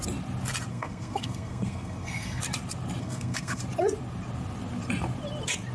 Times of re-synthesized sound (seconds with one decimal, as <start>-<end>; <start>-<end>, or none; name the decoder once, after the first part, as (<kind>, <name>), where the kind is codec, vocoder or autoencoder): 0.7-2.4 (codec, SNAC); 3.0-3.6